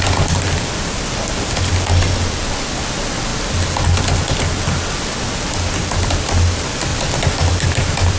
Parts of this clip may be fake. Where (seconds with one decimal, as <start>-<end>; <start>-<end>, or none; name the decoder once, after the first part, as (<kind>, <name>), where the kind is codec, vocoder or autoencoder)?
none